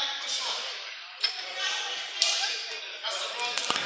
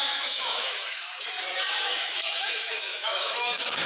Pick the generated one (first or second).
second